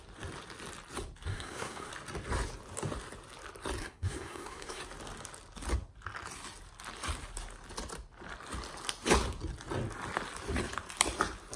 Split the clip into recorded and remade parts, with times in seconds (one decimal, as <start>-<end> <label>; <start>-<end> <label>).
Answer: 0.0-1.3 recorded; 1.3-1.9 remade; 1.9-3.8 recorded; 3.8-4.8 remade; 4.8-11.6 recorded